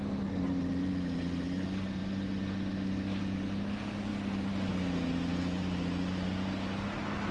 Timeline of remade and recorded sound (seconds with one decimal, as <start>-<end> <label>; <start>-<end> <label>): 0.0-7.3 recorded